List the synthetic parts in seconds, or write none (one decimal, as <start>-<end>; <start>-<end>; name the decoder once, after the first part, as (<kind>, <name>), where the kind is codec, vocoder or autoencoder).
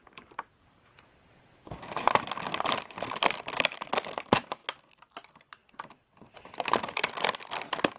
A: 0.0-8.0 (vocoder, BigVGAN v2)